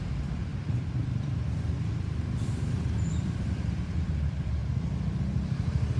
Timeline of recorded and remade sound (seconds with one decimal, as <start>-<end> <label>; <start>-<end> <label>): 0.0-4.6 remade; 4.6-5.2 recorded; 5.2-6.0 remade